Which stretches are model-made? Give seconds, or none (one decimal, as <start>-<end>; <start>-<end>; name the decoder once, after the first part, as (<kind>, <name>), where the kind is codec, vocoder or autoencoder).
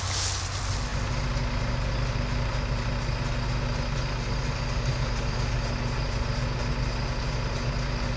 none